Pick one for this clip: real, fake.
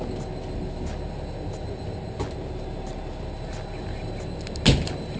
real